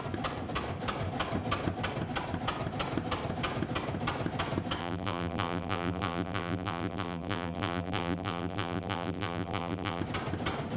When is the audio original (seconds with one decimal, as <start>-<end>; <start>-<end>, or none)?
0.0-4.8; 10.0-10.8